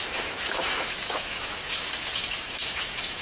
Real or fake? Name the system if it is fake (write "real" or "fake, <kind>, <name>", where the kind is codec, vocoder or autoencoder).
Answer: fake, autoencoder, DAC-VAE